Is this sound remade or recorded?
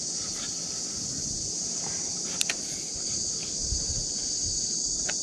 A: recorded